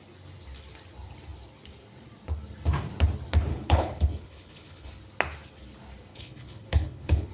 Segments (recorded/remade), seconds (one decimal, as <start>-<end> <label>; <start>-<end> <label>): 0.0-3.5 recorded; 3.5-4.9 remade; 4.9-6.1 recorded; 6.1-7.3 remade